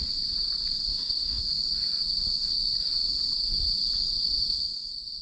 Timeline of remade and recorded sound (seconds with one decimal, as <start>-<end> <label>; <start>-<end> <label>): 0.0-0.9 recorded; 0.9-1.4 remade; 1.4-5.2 recorded